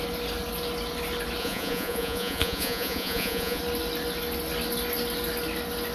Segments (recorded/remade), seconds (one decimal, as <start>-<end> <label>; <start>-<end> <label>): 0.0-1.4 recorded; 1.4-3.6 remade; 3.6-5.9 recorded